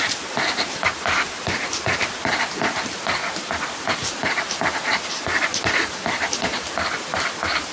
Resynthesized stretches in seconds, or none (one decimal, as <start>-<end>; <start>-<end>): 0.0-3.2; 4.1-7.7